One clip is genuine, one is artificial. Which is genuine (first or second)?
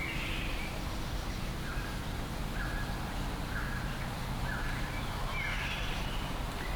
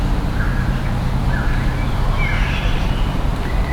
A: second